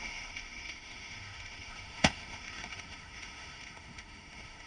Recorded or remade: remade